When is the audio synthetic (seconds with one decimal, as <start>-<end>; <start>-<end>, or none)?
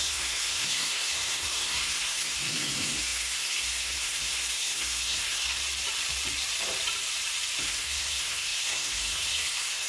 0.0-5.6; 7.6-9.9